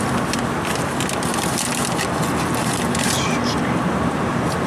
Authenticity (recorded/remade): recorded